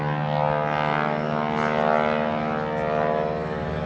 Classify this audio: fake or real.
real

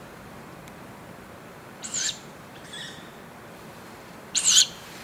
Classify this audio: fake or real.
fake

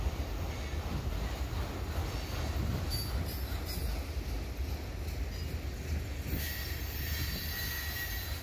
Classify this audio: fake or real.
real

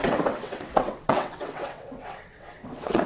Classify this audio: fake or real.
fake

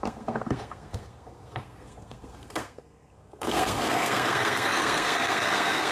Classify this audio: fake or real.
fake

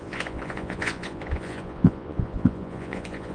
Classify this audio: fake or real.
fake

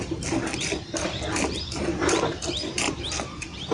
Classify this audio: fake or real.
real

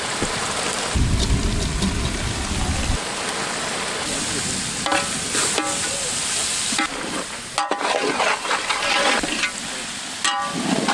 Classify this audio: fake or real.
real